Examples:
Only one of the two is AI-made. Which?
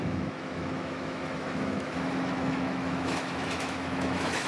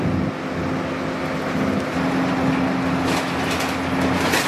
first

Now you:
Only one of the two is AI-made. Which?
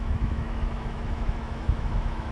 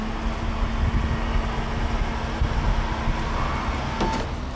first